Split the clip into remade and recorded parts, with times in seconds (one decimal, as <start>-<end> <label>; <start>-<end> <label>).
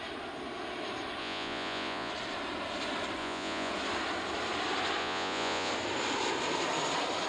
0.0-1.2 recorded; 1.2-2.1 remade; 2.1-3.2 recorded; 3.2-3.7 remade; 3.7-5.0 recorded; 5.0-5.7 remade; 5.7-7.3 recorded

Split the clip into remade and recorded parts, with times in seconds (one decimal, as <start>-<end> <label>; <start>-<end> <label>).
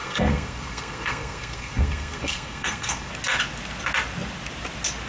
0.0-3.1 remade; 3.1-5.1 recorded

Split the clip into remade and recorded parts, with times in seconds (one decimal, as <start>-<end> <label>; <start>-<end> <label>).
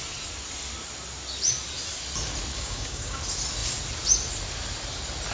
0.0-2.5 recorded; 2.5-3.2 remade; 3.2-5.3 recorded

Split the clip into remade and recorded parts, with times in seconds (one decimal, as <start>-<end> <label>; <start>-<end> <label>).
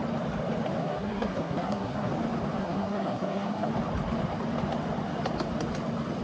0.0-0.8 recorded; 0.8-2.1 remade; 2.1-2.6 recorded; 2.6-3.7 remade; 3.7-6.2 recorded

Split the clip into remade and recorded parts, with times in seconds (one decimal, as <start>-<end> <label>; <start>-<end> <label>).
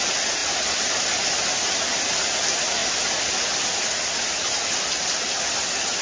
0.0-6.0 recorded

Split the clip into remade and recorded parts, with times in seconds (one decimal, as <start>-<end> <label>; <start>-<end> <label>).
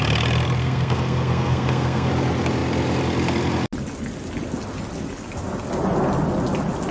0.0-0.6 recorded; 0.6-2.1 remade; 2.1-6.9 recorded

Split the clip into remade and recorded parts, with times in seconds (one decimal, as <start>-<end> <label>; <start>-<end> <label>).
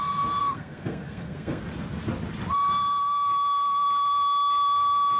0.0-0.4 recorded; 0.4-1.6 remade; 1.6-5.2 recorded